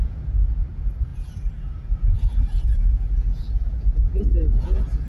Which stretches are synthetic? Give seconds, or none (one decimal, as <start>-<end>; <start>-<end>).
0.0-5.1